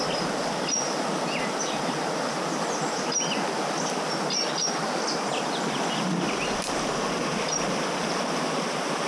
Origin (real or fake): real